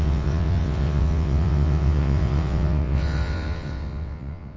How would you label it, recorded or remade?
remade